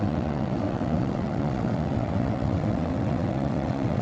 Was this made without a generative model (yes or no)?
no